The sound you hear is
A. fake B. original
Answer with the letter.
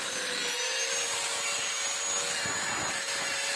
B